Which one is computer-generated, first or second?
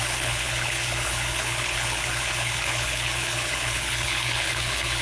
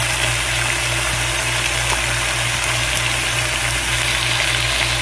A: first